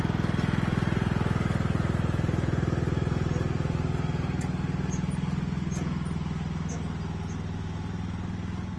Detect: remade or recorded recorded